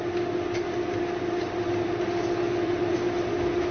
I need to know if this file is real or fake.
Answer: real